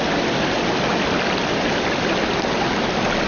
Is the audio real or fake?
real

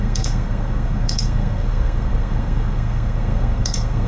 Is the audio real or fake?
fake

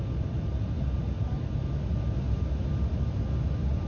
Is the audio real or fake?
real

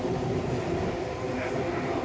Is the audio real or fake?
real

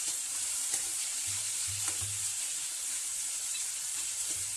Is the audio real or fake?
fake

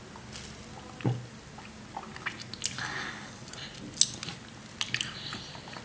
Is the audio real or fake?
real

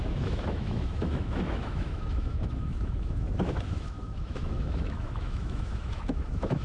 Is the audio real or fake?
fake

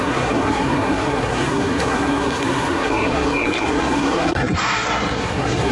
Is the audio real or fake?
fake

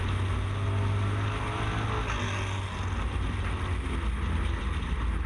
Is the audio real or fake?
real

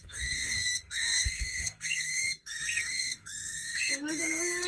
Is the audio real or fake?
fake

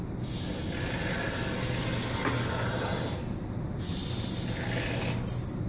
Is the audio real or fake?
real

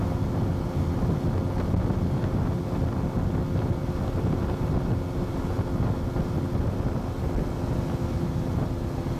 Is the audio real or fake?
real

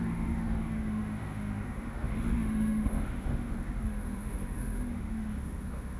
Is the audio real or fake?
fake